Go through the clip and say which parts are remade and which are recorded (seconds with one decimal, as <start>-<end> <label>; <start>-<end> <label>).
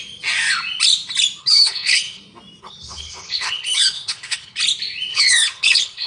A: 0.0-1.4 recorded; 1.4-2.2 remade; 2.2-2.6 recorded; 2.6-4.6 remade; 4.6-5.1 recorded; 5.1-6.1 remade